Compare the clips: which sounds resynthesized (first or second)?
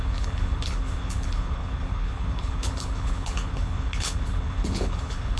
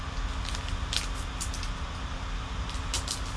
first